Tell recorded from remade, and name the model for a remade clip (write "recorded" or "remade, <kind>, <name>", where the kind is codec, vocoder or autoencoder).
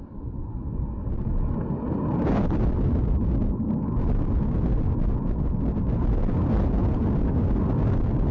recorded